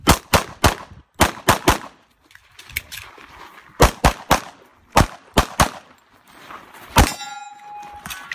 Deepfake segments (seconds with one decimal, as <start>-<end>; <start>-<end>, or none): none